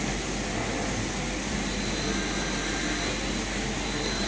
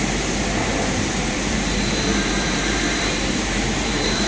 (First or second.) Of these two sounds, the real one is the first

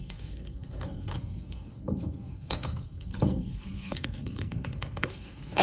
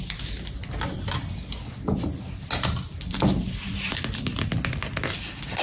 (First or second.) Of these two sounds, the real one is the second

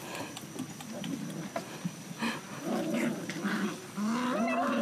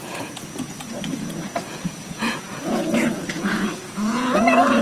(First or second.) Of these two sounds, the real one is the first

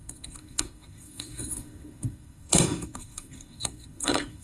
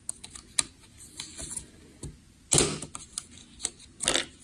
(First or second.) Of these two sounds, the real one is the second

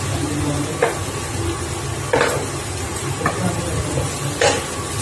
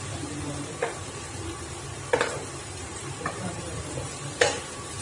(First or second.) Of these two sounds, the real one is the first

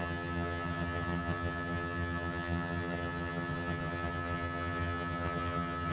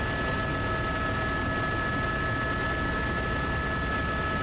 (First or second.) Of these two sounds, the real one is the second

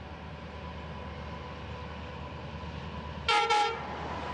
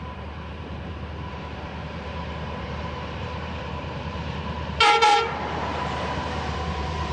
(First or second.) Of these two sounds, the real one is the first